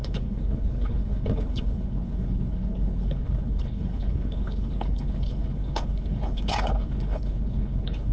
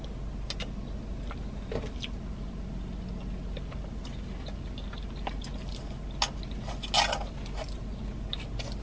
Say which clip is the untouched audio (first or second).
second